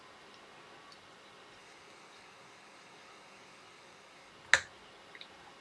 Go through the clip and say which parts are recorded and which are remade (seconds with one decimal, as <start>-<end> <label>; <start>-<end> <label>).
0.0-1.6 recorded; 1.6-4.3 remade; 4.3-5.6 recorded